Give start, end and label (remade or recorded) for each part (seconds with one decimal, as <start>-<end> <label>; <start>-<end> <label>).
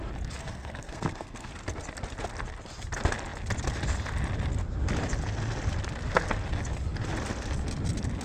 0.0-0.4 recorded; 0.4-1.5 remade; 1.5-8.2 recorded